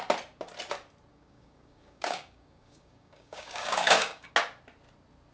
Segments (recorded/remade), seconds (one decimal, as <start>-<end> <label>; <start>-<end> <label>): 0.0-1.1 recorded; 1.1-4.3 remade; 4.3-5.3 recorded